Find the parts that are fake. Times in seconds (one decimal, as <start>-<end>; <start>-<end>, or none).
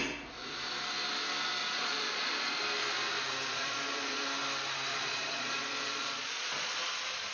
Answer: 1.6-2.6; 3.5-4.2; 4.9-6.7